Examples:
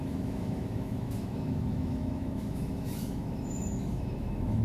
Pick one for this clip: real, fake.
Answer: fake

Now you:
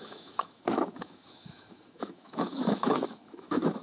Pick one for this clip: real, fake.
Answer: fake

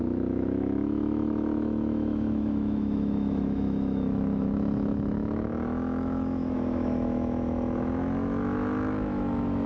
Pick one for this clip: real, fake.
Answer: fake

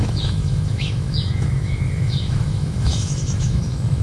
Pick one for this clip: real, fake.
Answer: fake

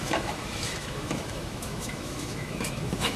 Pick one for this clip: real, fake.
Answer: fake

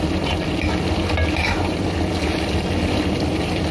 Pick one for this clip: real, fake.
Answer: real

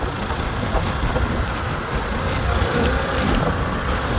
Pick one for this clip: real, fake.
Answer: real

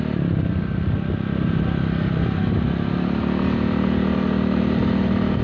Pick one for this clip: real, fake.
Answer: real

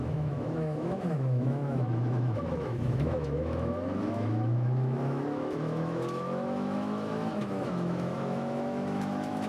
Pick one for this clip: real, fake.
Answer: fake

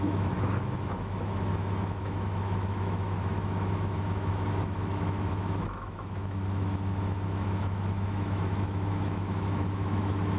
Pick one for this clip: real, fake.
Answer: fake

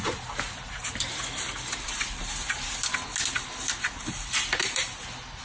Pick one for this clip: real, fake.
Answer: real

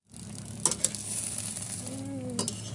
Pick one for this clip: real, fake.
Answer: real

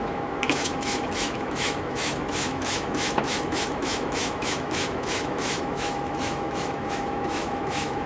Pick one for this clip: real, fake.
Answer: fake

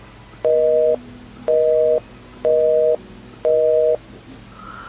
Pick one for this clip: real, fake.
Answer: real